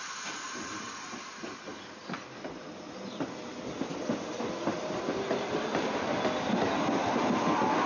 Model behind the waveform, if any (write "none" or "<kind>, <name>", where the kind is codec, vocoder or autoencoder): none